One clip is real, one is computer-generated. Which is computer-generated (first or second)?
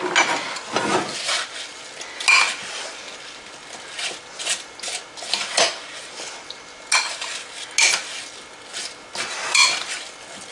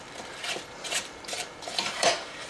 second